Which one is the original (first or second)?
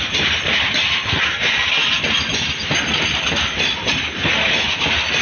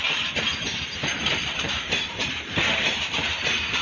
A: first